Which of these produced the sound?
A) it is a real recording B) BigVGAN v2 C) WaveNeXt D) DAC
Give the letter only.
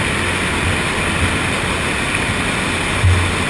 A